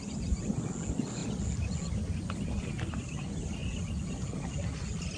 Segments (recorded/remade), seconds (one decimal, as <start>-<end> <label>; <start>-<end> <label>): 0.0-5.2 recorded